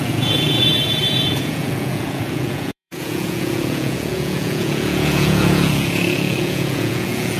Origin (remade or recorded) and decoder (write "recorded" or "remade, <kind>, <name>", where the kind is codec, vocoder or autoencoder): remade, vocoder, Vocos